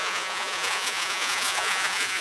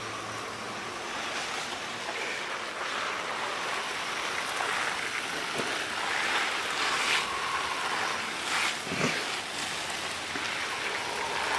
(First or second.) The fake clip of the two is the first